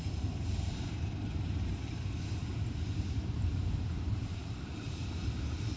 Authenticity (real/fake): fake